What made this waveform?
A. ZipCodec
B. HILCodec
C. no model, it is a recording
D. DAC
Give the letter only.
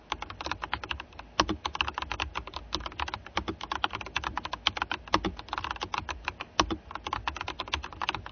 C